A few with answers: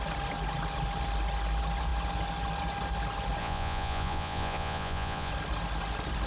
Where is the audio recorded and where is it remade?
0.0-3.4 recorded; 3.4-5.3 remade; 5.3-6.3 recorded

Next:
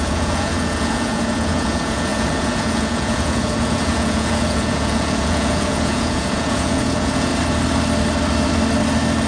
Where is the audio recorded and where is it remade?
0.0-7.3 remade; 7.3-9.3 recorded

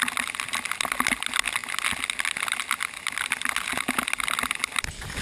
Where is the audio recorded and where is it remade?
0.0-5.2 recorded

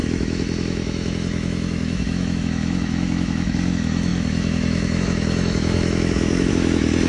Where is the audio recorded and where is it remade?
0.0-7.1 remade

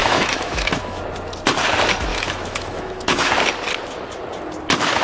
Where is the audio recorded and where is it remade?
0.0-1.0 remade; 1.0-2.1 recorded; 2.1-3.3 remade; 3.3-5.0 recorded

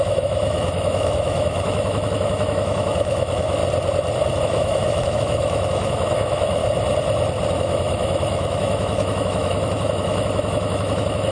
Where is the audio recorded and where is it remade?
0.0-3.6 remade; 3.6-4.4 recorded; 4.4-6.6 remade; 6.6-7.6 recorded; 7.6-11.3 remade

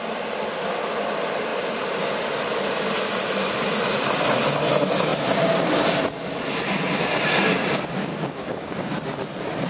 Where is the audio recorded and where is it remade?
0.0-8.0 recorded; 8.0-8.9 remade; 8.9-9.7 recorded

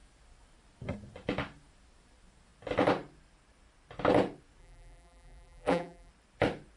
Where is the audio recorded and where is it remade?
0.0-4.6 recorded; 4.6-6.1 remade; 6.1-6.8 recorded